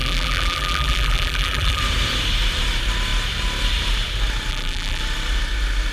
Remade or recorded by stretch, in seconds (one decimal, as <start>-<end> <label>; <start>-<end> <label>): 0.0-1.8 remade; 1.8-4.5 recorded; 4.5-5.0 remade; 5.0-5.9 recorded